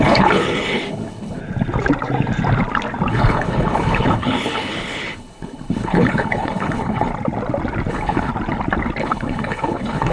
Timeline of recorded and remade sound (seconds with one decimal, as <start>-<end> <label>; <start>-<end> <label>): 0.0-1.4 remade; 1.4-3.1 recorded; 3.1-7.1 remade; 7.1-7.9 recorded; 7.9-8.3 remade; 8.3-9.0 recorded; 9.0-10.1 remade